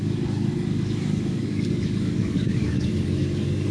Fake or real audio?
fake